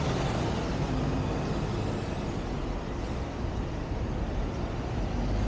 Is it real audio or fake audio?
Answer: real